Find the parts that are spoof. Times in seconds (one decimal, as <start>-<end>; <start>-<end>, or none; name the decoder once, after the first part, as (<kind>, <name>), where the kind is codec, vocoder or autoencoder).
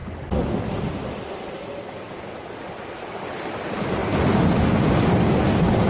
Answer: none